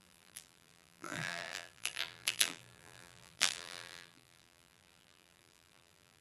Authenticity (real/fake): fake